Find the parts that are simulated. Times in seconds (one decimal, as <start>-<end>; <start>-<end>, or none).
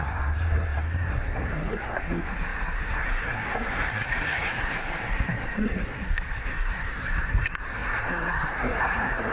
0.0-9.3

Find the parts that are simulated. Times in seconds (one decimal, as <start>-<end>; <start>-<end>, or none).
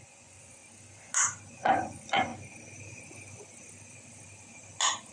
0.0-0.6; 1.5-2.3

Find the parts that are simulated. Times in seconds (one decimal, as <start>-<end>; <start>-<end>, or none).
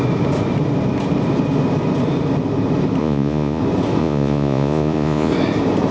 3.0-3.6; 4.0-5.3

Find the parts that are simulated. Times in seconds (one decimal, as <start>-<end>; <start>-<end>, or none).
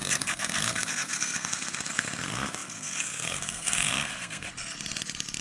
0.0-4.5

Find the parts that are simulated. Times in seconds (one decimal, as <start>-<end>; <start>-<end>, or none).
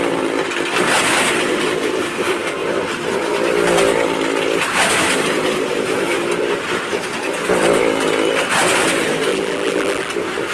9.3-10.1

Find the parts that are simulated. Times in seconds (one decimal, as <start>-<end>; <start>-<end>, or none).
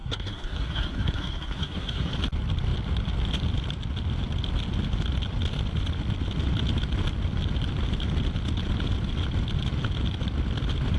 0.0-2.1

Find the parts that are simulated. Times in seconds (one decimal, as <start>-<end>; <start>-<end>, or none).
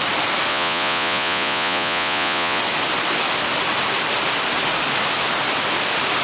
0.5-2.6